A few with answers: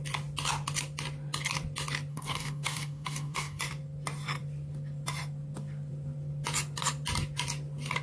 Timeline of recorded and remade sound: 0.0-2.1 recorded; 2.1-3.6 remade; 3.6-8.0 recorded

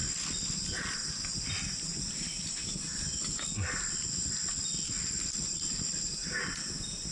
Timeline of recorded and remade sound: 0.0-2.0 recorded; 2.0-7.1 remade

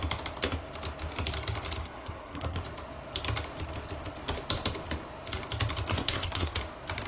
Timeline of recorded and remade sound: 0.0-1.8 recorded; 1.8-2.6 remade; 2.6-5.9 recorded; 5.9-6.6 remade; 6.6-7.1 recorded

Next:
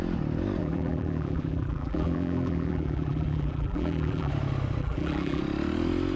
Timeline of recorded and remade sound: 0.0-0.6 recorded; 0.6-4.3 remade; 4.3-4.8 recorded; 4.8-5.4 remade; 5.4-6.2 recorded